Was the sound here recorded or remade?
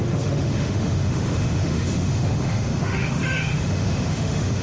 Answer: remade